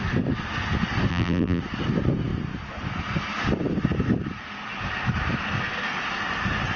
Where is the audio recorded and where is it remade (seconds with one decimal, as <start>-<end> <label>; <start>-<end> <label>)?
0.0-1.1 recorded; 1.1-1.6 remade; 1.6-6.8 recorded